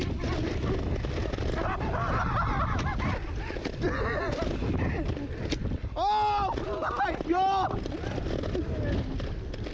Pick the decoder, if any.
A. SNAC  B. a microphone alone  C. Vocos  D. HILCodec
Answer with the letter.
B